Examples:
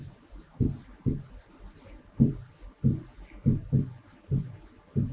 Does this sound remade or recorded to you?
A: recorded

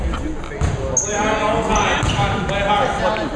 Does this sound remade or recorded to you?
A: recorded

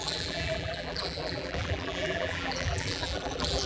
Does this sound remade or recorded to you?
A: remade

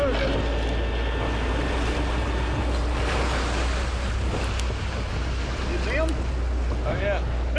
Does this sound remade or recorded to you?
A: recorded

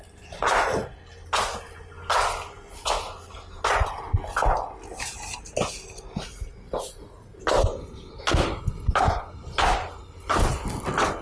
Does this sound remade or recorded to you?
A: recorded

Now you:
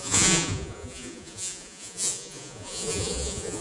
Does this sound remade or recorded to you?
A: remade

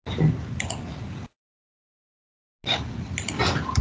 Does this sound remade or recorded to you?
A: recorded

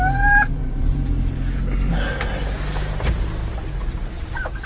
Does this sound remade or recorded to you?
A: recorded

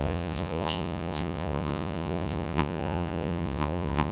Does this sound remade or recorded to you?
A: remade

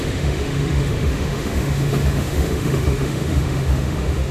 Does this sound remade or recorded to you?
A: remade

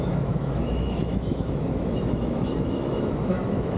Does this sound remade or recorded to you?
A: remade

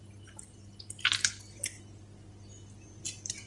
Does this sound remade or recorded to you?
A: recorded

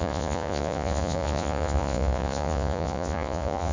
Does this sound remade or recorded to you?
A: remade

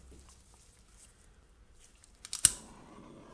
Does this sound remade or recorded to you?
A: recorded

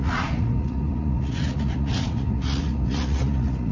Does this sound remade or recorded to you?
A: remade